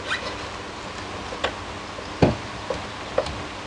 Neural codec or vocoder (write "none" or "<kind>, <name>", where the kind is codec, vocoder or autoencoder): none